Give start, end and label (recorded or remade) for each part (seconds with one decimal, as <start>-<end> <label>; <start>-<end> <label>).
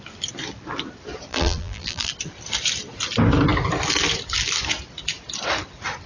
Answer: 0.0-1.3 recorded; 1.3-2.1 remade; 2.1-6.1 recorded